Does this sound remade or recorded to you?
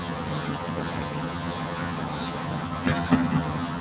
remade